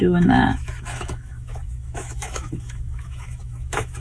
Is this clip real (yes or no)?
no